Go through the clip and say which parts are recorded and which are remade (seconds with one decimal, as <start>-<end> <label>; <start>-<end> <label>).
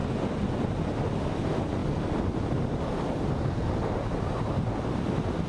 0.0-5.5 recorded